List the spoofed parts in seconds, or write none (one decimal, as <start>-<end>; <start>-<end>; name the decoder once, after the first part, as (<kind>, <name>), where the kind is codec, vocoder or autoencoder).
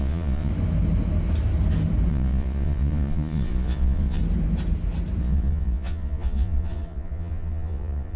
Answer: 0.0-0.5 (vocoder, Vocos); 2.1-4.2; 5.2-8.2